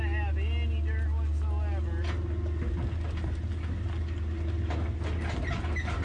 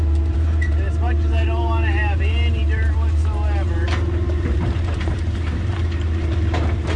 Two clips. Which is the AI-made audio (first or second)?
second